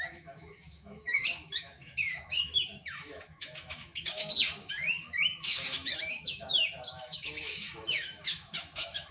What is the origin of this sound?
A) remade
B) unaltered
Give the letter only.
A